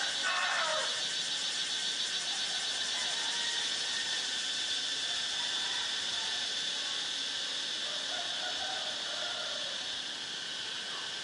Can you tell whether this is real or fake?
real